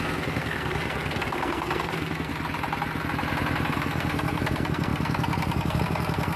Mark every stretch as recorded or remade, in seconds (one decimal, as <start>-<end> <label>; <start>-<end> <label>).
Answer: 0.0-2.3 remade; 2.3-3.7 recorded; 3.7-6.4 remade

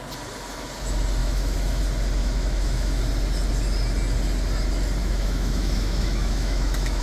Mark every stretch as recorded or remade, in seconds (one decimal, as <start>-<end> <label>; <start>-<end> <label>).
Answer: 0.0-1.2 recorded; 1.2-1.8 remade; 1.8-2.2 recorded; 2.2-3.0 remade; 3.0-5.0 recorded; 5.0-7.0 remade

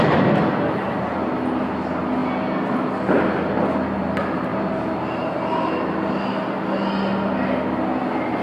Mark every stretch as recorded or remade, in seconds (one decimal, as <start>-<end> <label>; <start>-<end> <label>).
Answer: 0.0-8.4 recorded

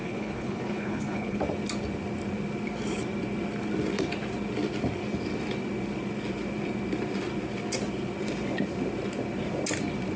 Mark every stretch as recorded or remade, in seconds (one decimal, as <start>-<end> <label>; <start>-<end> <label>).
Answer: 0.0-1.4 remade; 1.4-10.2 recorded

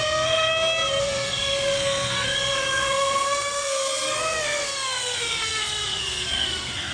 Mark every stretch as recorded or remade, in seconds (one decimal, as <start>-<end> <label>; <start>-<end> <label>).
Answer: 0.0-0.5 remade; 0.5-1.0 recorded; 1.0-6.9 remade

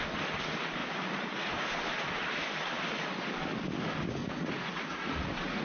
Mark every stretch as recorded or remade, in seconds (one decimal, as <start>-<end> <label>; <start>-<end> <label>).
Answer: 0.0-0.8 recorded; 0.8-1.6 remade; 1.6-4.2 recorded; 4.2-5.6 remade

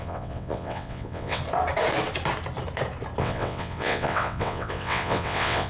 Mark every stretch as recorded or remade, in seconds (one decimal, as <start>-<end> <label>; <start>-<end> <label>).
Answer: 0.0-1.4 remade; 1.4-3.2 recorded; 3.2-5.7 remade